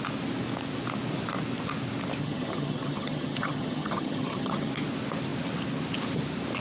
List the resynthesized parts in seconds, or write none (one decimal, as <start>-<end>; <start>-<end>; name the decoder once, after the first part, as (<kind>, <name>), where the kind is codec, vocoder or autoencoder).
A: 2.2-4.7 (vocoder, HiFi-GAN)